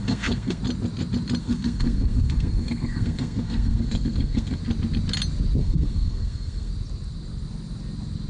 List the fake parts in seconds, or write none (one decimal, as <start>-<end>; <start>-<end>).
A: 0.0-0.6; 1.4-4.6; 5.6-6.7